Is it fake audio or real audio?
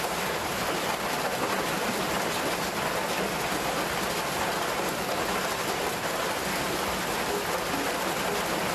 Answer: real